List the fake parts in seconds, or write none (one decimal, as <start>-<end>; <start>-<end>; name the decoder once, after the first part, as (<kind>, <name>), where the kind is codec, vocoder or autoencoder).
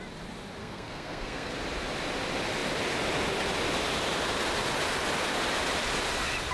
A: 0.6-1.5 (codec, SNAC)